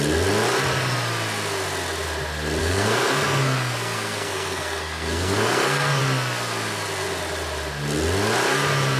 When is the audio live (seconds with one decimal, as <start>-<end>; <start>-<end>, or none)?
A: 0.0-2.6; 6.0-9.0

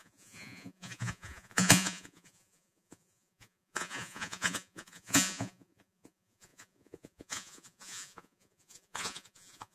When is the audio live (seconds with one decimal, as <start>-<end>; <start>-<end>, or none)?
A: none

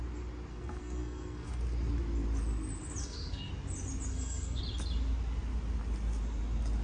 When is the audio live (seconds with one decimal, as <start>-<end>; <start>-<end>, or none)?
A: 0.0-0.5; 1.6-3.0; 3.5-4.1; 4.6-6.8

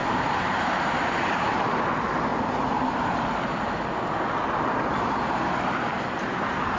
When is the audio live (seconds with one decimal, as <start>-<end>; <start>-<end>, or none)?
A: 1.8-2.3; 3.2-6.8

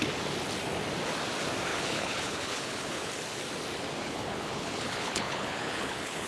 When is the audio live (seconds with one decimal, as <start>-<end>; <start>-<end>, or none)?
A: 0.0-1.7; 3.1-4.0

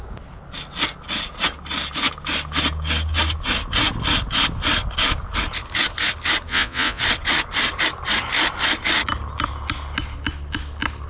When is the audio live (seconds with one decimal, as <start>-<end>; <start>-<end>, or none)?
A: 0.0-6.5; 7.0-11.1

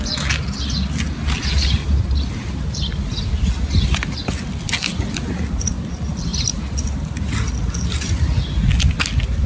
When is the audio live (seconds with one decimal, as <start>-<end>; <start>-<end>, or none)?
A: 0.0-9.5